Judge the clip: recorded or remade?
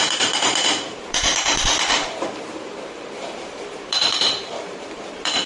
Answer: remade